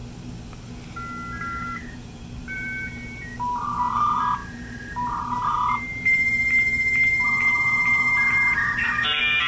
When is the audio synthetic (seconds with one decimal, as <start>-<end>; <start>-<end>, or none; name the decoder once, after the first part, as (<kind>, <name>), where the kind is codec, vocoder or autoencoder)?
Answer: 1.6-3.3 (vocoder, BigVGAN v2); 3.9-4.4; 5.2-9.5